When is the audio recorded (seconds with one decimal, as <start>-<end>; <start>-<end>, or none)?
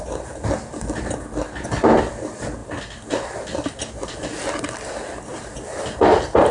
0.0-6.5